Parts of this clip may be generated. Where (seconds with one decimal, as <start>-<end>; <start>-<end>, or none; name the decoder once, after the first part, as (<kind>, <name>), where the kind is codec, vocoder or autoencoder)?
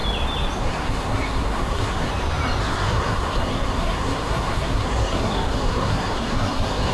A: 0.6-2.1 (codec, SNAC); 2.6-6.9